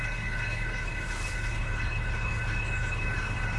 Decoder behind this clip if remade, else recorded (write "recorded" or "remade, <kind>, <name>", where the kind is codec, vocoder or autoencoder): remade, codec, HILCodec